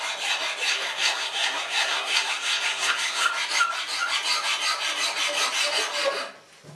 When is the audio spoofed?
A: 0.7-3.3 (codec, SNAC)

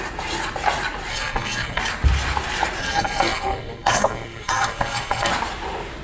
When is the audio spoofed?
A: 1.1-1.8 (codec, SNAC); 2.8-5.3

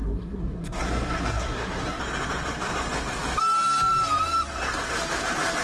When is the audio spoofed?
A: 0.0-2.0 (codec, SNAC)

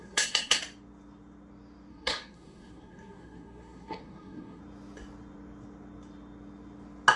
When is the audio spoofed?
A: 0.0-0.6 (codec, SNAC); 1.9-4.6